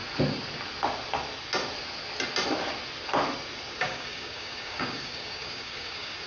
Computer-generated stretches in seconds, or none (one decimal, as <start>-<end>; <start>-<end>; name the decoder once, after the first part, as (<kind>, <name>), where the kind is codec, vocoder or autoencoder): 3.8-6.3 (codec, DAC)